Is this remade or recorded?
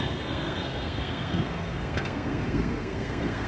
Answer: remade